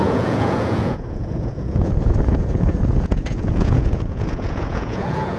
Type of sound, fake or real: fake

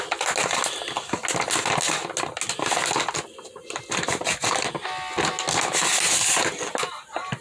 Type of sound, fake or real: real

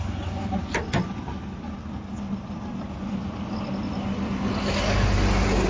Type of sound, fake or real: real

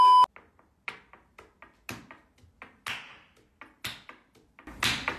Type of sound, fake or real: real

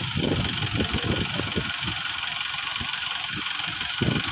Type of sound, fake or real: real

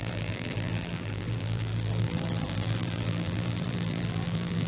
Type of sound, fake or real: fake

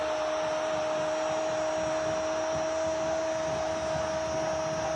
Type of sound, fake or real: real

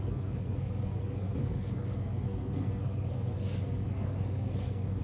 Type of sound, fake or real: fake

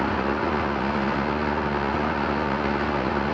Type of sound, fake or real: fake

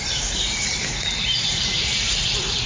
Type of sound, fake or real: fake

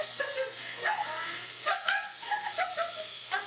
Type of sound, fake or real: fake